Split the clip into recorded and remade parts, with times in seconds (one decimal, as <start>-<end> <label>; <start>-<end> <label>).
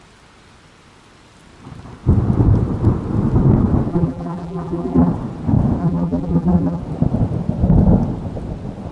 0.0-3.9 recorded; 3.9-5.1 remade; 5.1-5.8 recorded; 5.8-6.8 remade; 6.8-8.9 recorded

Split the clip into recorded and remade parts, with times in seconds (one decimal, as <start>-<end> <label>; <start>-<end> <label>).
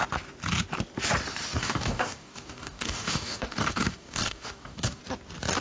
0.0-1.6 recorded; 1.6-5.0 remade; 5.0-5.6 recorded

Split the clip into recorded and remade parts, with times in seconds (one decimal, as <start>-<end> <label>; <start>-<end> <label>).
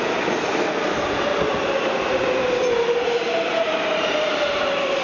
0.0-1.3 remade; 1.3-2.7 recorded; 2.7-5.0 remade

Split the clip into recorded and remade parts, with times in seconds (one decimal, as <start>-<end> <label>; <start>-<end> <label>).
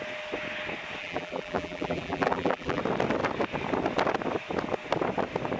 0.0-1.0 recorded; 1.0-2.8 remade; 2.8-5.6 recorded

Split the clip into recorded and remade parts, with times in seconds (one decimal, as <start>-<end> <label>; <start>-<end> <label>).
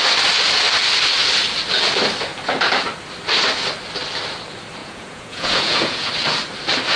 0.0-4.8 recorded; 4.8-6.1 remade; 6.1-7.0 recorded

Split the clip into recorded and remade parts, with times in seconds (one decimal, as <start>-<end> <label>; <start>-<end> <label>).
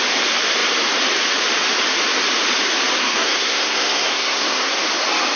0.0-3.0 recorded; 3.0-4.7 remade; 4.7-5.4 recorded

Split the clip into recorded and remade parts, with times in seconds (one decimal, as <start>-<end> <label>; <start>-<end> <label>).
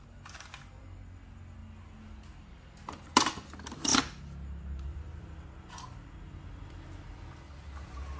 0.0-8.2 recorded